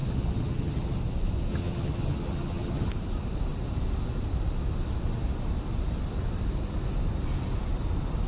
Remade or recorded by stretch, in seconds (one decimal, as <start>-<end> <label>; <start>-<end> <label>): 0.0-1.0 remade; 1.0-1.5 recorded; 1.5-2.9 remade; 2.9-8.3 recorded